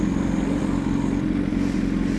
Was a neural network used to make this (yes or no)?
no